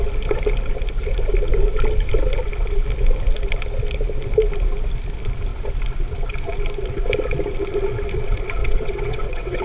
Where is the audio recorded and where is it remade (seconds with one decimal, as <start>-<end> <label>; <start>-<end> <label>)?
0.0-8.6 recorded; 8.6-9.6 remade